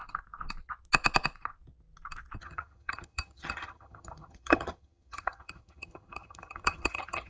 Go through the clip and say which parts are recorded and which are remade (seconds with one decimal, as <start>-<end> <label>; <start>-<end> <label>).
0.0-2.4 recorded; 2.4-7.3 remade